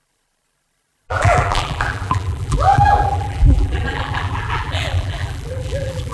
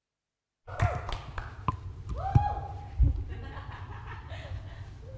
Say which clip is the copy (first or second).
first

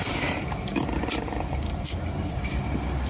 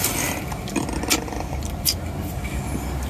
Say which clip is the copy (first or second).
first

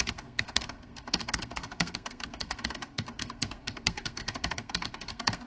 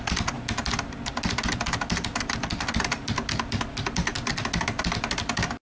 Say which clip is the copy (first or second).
first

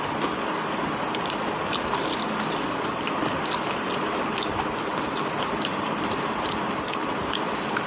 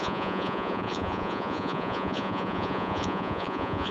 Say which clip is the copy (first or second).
second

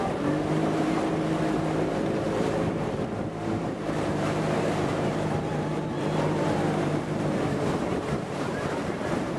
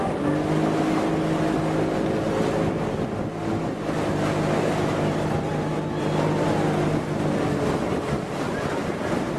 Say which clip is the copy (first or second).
first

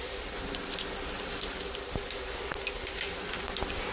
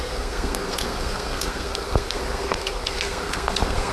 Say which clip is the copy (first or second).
second